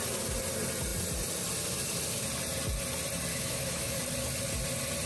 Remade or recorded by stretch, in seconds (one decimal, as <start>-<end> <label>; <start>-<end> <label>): 0.0-3.3 recorded; 3.3-4.0 remade; 4.0-5.1 recorded